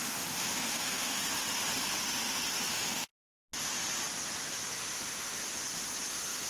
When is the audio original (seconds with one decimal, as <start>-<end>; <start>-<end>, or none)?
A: 1.2-2.7; 3.1-4.5; 5.4-6.1